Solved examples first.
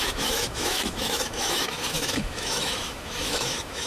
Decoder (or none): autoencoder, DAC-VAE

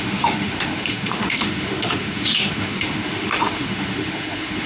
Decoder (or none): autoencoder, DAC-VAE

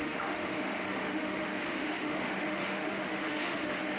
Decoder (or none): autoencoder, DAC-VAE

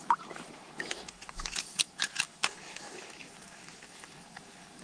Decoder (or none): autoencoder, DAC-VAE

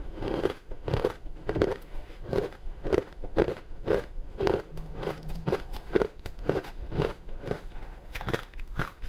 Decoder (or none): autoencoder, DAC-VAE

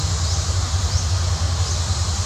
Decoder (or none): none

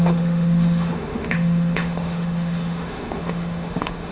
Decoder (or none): autoencoder, DAC-VAE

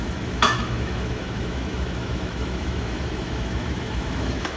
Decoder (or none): autoencoder, DAC-VAE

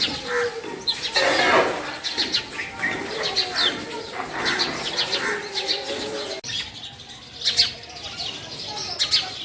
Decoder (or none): none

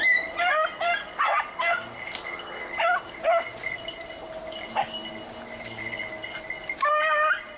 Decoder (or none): none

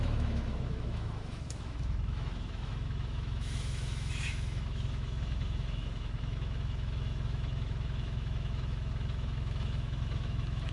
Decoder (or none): autoencoder, DAC-VAE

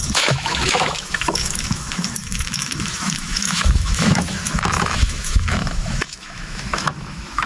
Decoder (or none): autoencoder, DAC-VAE